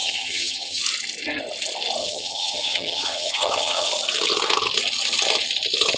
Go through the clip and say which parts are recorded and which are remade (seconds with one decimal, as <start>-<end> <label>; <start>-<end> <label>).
0.0-0.8 remade; 0.8-2.0 recorded; 2.0-3.9 remade; 3.9-6.0 recorded

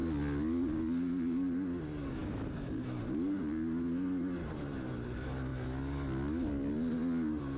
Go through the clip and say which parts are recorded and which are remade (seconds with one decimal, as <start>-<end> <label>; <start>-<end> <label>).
0.0-7.6 recorded

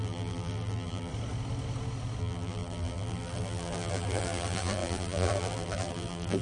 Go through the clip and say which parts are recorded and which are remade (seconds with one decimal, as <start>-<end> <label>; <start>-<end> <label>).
0.0-1.1 remade; 1.1-2.2 recorded; 2.2-6.4 remade

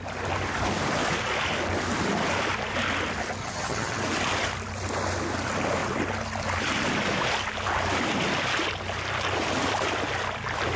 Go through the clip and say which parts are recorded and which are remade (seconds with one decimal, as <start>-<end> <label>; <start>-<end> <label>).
0.0-3.4 recorded; 3.4-4.0 remade; 4.0-10.8 recorded

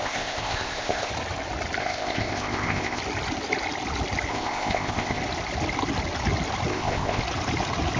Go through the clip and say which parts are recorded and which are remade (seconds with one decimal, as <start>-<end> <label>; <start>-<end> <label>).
0.0-1.1 remade; 1.1-1.8 recorded; 1.8-3.0 remade; 3.0-4.3 recorded; 4.3-5.2 remade; 5.2-6.7 recorded; 6.7-7.2 remade; 7.2-8.0 recorded

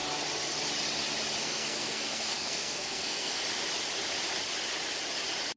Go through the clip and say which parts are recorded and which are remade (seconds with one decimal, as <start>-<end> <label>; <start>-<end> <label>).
0.0-1.4 recorded; 1.4-3.4 remade; 3.4-5.6 recorded